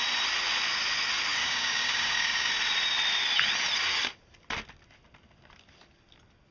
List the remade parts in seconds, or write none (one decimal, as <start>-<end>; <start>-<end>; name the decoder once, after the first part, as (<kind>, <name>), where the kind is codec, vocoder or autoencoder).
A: 1.4-2.5 (codec, DAC)